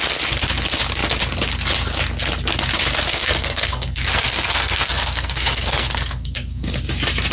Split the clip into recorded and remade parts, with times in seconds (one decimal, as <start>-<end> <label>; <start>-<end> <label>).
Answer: 0.0-3.1 recorded; 3.1-6.6 remade; 6.6-7.3 recorded